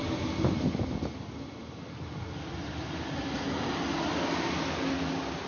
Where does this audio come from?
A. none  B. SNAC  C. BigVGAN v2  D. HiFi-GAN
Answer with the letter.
A